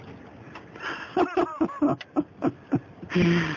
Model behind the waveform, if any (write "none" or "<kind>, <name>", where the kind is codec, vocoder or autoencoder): none